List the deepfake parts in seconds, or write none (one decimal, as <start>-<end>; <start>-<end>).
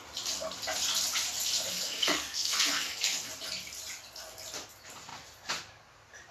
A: 1.7-3.3